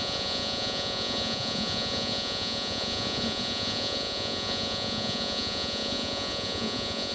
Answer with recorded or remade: remade